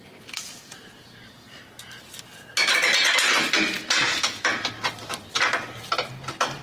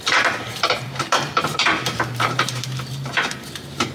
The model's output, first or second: second